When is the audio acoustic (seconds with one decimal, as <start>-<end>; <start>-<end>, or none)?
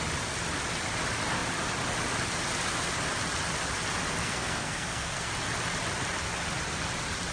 0.0-4.2; 5.3-7.3